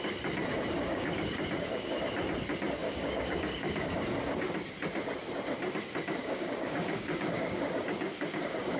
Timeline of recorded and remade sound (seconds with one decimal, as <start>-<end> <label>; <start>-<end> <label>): 0.0-0.9 recorded; 0.9-2.0 remade; 2.0-2.8 recorded; 2.8-4.0 remade; 4.0-6.2 recorded; 6.2-8.8 remade